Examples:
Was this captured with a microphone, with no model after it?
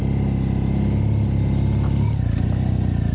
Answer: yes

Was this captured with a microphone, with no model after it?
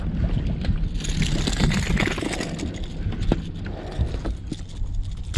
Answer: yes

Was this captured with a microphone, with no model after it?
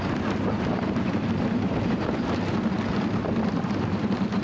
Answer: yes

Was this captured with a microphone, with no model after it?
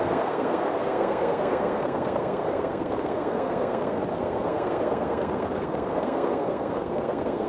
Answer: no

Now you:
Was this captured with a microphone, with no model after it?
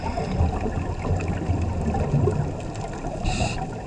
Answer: yes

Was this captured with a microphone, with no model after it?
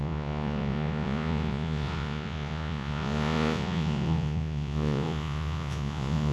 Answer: no